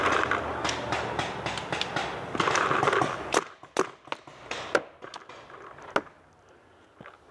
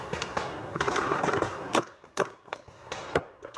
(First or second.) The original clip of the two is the first